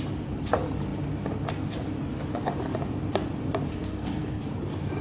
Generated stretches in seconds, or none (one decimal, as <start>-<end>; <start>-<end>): 3.7-4.4